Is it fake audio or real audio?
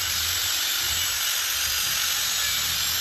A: real